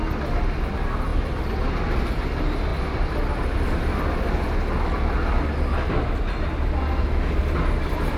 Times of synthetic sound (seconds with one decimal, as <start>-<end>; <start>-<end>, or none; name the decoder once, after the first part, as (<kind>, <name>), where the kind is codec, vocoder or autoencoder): none